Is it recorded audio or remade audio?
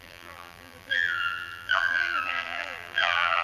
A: remade